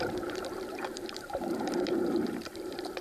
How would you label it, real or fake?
fake